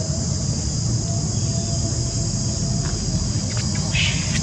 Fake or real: real